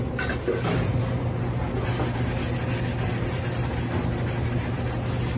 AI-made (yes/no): no